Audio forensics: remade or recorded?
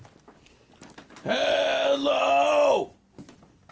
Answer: recorded